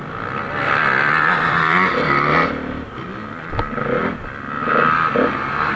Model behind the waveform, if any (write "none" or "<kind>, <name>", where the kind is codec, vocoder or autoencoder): none